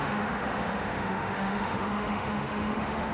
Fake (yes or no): yes